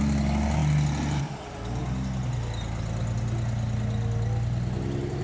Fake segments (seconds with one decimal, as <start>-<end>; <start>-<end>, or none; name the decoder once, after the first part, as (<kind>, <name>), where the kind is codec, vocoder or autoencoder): none